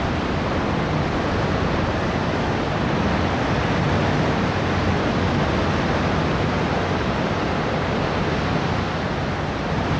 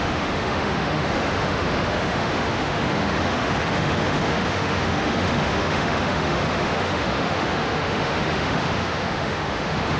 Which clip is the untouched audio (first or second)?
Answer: first